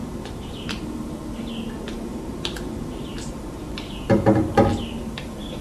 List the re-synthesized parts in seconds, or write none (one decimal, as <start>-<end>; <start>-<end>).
0.0-0.8; 2.1-3.9